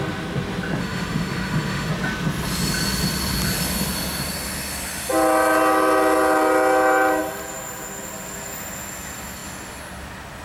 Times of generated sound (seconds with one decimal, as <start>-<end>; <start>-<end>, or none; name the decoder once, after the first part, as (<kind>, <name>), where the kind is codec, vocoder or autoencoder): 0.8-1.9 (autoencoder, DAC-VAE)